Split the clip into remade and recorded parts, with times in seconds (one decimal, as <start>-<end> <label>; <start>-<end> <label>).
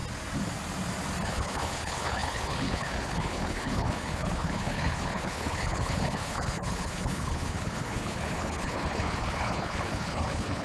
0.0-1.2 recorded; 1.2-10.6 remade